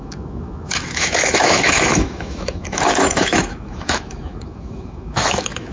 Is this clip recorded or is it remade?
remade